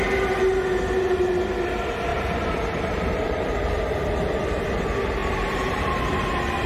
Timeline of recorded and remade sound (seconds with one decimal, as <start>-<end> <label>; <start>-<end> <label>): 0.0-2.1 recorded; 2.1-3.8 remade; 3.8-5.2 recorded; 5.2-6.3 remade; 6.3-6.7 recorded